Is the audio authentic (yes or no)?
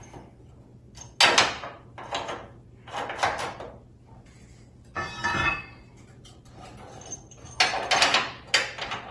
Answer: yes